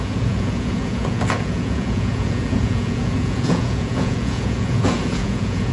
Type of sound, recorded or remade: remade